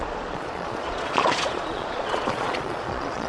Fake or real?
fake